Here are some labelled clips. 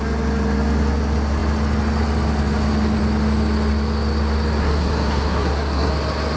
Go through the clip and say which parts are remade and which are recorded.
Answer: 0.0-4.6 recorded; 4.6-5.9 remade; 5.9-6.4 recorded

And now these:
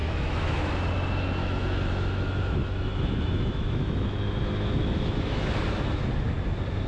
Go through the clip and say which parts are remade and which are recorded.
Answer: 0.0-0.7 remade; 0.7-1.4 recorded; 1.4-5.5 remade; 5.5-6.9 recorded